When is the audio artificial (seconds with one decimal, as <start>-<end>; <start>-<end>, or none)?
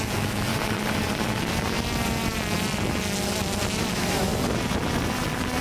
0.0-0.5; 3.9-4.3